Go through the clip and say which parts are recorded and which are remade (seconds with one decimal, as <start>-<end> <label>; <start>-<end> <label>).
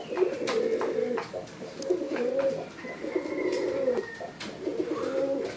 0.0-1.0 recorded; 1.0-2.3 remade; 2.3-5.6 recorded